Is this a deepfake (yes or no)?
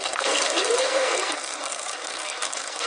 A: yes